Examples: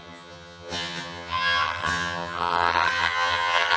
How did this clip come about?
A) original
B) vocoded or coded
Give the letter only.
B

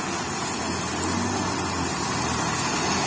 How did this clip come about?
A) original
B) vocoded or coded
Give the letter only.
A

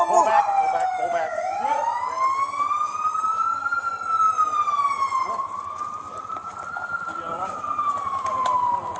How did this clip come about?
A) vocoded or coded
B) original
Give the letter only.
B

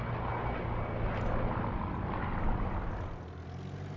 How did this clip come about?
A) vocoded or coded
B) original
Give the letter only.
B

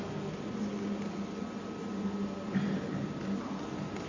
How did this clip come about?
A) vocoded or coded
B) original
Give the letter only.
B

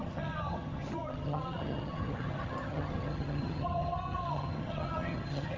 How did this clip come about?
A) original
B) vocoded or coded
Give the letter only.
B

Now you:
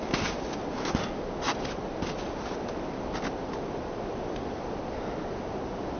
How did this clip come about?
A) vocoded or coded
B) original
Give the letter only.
B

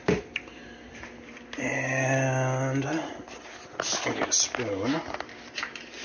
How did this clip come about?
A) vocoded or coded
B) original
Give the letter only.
B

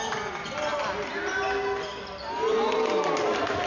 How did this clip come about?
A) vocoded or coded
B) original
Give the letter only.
B